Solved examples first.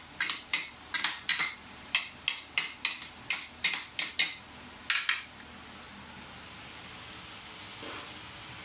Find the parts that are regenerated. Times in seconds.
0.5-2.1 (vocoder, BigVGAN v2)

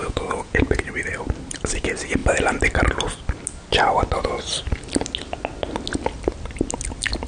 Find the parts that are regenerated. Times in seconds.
0.0-0.8 (vocoder, Vocos)